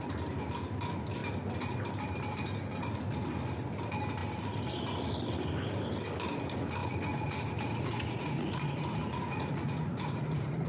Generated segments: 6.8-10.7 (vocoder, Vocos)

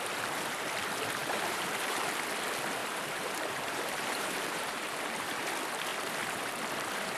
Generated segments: 1.2-2.0 (vocoder, BigVGAN v2); 2.8-5.4

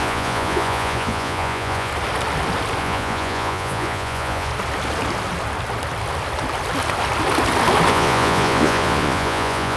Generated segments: 0.0-1.9 (vocoder, Vocos); 2.8-4.5; 7.9-9.8

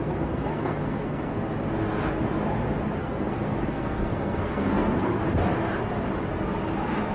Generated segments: 0.0-1.3 (codec, SNAC); 3.0-5.2

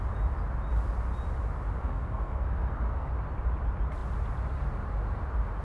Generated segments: 1.8-3.1 (codec, SNAC)

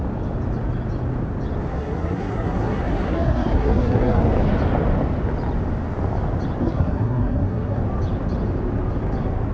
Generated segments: 1.7-4.2 (codec, SNAC); 6.6-7.8

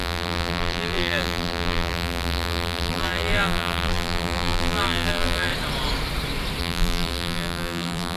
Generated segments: 0.0-5.5 (vocoder, BigVGAN v2); 6.6-8.2